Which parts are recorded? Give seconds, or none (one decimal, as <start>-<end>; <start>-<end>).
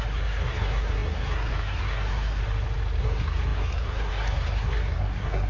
2.4-3.0